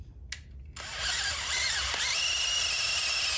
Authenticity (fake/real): real